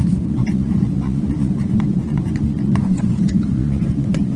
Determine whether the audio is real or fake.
fake